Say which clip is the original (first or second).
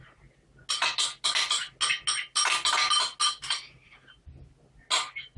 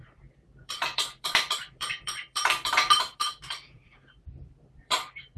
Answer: first